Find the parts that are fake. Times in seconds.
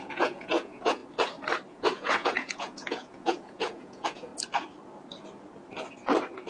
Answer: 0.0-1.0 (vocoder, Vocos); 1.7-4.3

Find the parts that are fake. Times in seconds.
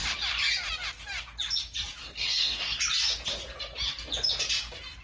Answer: 2.0-2.8 (codec, SNAC)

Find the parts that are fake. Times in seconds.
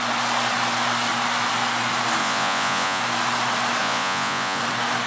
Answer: 2.2-3.0 (vocoder, Vocos); 3.8-4.6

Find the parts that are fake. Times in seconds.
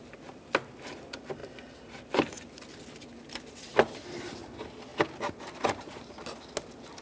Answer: none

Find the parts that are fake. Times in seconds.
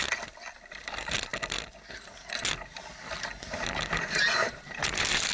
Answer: 4.4-5.3 (vocoder, BigVGAN v2)